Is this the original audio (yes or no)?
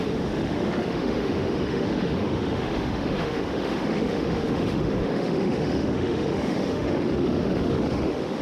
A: no